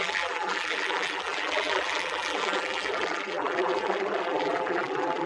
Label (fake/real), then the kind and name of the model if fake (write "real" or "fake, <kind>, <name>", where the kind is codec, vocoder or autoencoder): fake, vocoder, BigVGAN v2